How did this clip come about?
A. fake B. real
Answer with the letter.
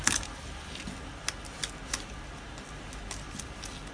B